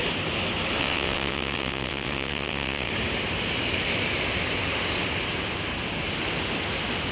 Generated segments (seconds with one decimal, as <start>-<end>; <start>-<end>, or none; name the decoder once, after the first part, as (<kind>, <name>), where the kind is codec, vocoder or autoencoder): 0.8-2.9 (vocoder, WaveNeXt)